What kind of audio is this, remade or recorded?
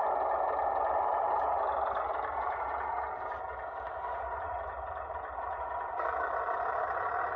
recorded